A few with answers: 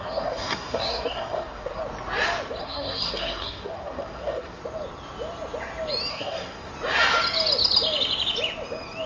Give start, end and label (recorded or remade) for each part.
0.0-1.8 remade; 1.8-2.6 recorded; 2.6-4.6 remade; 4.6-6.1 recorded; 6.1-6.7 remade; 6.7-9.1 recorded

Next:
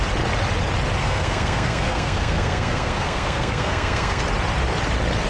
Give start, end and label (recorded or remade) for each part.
0.0-1.0 recorded; 1.0-4.2 remade; 4.2-5.3 recorded